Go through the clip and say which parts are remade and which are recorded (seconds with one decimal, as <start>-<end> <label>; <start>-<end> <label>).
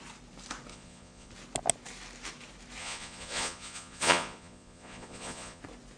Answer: 0.0-0.7 recorded; 0.7-1.3 remade; 1.3-2.8 recorded; 2.8-5.6 remade; 5.6-6.0 recorded